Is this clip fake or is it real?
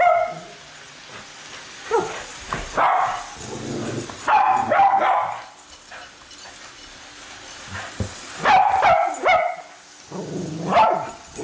real